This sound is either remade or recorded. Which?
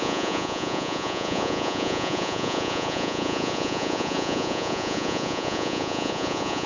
remade